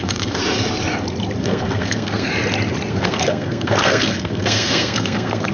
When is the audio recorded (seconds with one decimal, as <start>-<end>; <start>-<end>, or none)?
0.4-1.4; 2.3-2.9